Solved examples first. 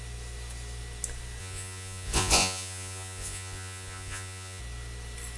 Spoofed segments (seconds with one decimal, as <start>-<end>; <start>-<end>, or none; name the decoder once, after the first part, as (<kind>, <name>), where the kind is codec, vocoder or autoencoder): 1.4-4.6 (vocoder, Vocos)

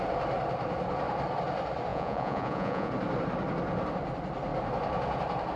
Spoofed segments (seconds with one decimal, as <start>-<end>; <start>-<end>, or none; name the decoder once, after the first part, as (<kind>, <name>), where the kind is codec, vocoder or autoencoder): 1.9-2.9 (vocoder, Vocos)

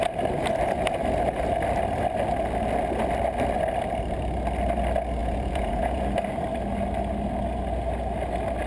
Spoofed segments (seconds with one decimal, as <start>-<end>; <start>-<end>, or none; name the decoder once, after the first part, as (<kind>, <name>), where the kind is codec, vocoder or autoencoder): 5.2-6.0 (vocoder, Vocos)